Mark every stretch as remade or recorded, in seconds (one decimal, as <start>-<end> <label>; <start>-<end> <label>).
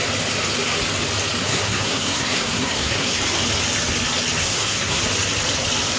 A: 0.0-1.4 recorded; 1.4-3.2 remade; 3.2-4.4 recorded; 4.4-5.0 remade; 5.0-6.0 recorded